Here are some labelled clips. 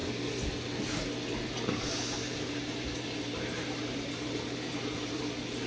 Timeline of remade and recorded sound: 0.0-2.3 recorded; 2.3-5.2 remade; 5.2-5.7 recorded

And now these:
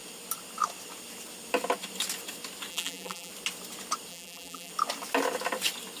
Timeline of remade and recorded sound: 0.0-2.7 recorded; 2.7-3.3 remade; 3.3-4.1 recorded; 4.1-4.7 remade; 4.7-6.0 recorded

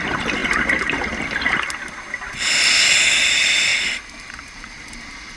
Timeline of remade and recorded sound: 0.0-0.4 remade; 0.4-3.2 recorded; 3.2-5.4 remade